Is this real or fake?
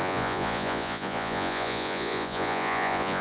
fake